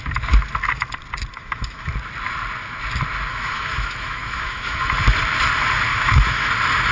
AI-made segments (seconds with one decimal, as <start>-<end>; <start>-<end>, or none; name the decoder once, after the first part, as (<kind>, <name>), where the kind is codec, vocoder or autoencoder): 1.3-1.9 (autoencoder, DAC-VAE); 3.3-4.8; 5.9-6.5